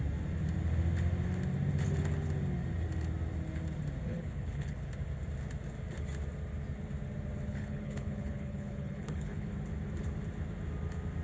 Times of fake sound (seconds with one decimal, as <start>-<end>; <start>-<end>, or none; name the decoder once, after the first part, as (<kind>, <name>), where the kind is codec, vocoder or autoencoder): 4.1-4.9 (codec, HILCodec); 7.5-9.5